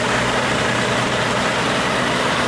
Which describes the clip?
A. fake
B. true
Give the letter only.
A